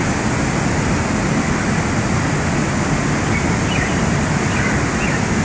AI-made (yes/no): no